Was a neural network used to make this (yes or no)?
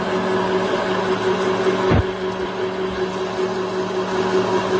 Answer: no